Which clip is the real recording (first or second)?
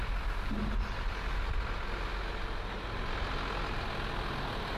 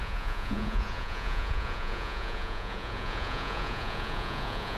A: first